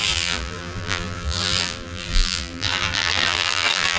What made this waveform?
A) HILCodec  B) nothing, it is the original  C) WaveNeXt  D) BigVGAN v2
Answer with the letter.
D